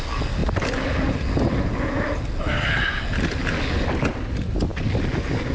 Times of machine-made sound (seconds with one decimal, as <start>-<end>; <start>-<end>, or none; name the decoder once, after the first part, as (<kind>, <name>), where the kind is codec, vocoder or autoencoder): none